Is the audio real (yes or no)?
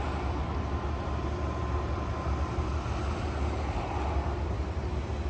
yes